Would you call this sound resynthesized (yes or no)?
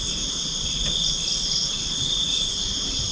no